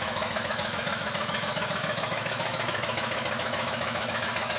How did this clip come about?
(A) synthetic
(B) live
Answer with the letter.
A